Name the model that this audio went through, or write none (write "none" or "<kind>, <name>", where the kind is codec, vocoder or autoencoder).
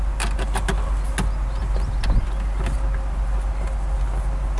none